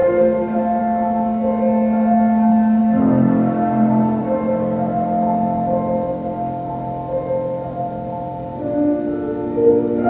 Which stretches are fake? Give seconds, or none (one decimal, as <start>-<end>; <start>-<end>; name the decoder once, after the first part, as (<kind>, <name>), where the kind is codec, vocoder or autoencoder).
0.0-0.8 (codec, DAC); 2.8-4.2; 6.1-6.7